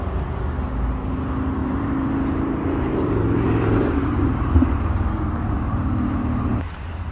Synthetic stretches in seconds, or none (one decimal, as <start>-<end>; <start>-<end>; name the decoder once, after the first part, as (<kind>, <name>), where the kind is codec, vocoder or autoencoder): 1.6-5.9 (vocoder, BigVGAN v2)